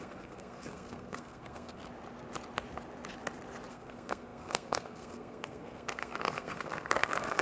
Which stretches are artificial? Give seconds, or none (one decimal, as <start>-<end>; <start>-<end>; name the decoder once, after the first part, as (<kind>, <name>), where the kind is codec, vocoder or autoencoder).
0.0-1.8 (codec, SNAC); 3.7-7.4